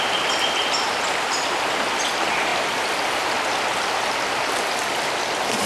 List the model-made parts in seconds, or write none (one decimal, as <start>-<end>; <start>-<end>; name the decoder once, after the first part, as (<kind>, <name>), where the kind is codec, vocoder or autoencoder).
none